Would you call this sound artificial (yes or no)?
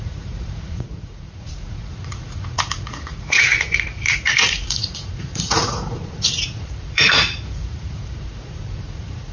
yes